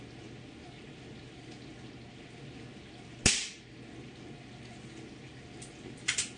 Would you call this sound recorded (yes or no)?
yes